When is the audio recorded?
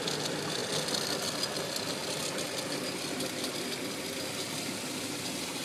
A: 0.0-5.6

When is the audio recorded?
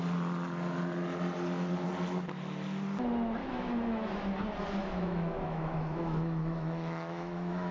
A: 0.0-3.4; 4.1-4.8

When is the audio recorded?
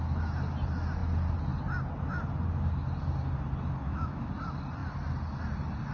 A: 0.0-3.8; 4.3-5.9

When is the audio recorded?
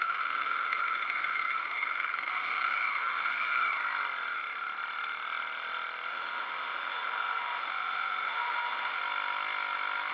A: 3.6-6.1; 9.0-10.1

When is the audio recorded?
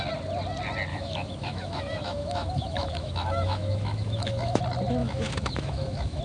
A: 0.0-0.9; 4.6-5.0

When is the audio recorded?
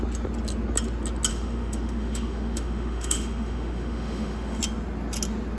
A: 0.0-1.3; 4.6-5.6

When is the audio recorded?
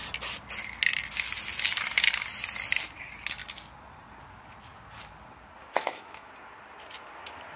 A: 0.0-5.6; 6.3-7.6